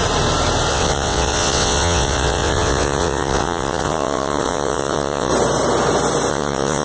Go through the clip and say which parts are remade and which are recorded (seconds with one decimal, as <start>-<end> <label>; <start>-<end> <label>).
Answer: 0.0-0.7 recorded; 0.7-5.3 remade; 5.3-6.3 recorded; 6.3-6.8 remade